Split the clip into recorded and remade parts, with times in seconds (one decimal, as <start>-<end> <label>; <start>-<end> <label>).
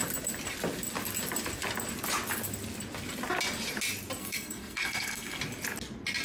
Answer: 0.0-4.2 recorded; 4.2-5.4 remade; 5.4-6.2 recorded